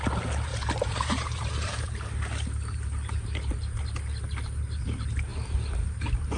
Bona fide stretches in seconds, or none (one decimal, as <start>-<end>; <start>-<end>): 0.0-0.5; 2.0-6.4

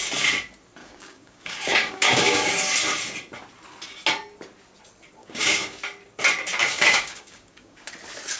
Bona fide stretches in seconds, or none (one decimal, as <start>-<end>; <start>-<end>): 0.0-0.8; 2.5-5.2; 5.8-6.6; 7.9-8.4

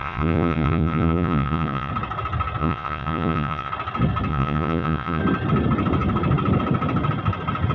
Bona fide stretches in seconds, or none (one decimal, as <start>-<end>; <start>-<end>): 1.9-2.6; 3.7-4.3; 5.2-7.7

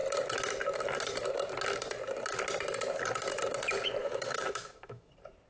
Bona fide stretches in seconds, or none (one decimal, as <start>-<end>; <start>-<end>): 0.0-4.0; 5.1-5.5

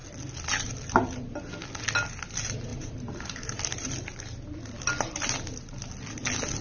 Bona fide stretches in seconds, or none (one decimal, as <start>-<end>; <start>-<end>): 0.0-2.7; 3.6-6.6

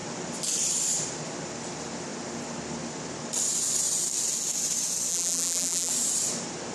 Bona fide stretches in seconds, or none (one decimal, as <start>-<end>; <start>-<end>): 0.0-5.1; 5.9-6.7

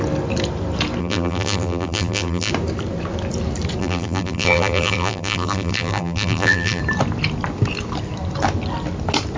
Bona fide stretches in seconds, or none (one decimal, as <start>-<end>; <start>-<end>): 0.0-1.0; 2.5-3.8; 6.8-9.4

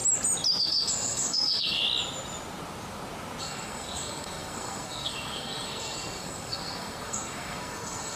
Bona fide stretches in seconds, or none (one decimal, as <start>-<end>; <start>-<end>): 0.0-0.6; 1.8-3.4